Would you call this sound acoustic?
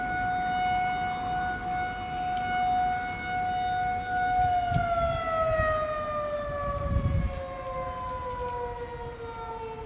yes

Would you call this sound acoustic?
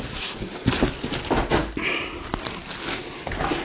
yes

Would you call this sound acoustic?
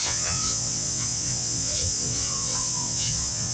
no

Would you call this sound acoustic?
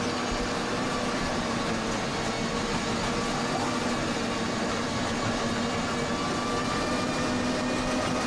yes